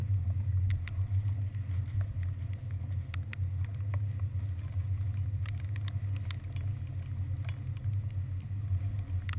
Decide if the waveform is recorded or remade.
recorded